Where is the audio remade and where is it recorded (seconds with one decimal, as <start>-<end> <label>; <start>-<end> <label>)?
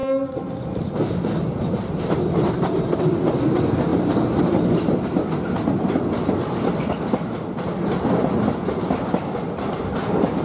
0.0-10.4 recorded